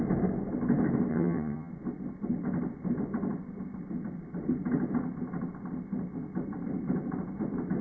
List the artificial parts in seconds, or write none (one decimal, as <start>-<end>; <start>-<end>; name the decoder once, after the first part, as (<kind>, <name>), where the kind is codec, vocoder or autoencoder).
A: 1.1-1.7 (vocoder, HiFi-GAN)